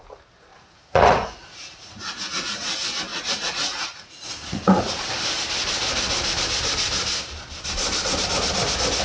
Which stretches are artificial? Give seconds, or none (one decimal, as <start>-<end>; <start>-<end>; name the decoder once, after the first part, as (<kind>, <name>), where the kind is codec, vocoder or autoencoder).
0.5-2.7 (vocoder, Vocos); 3.1-5.1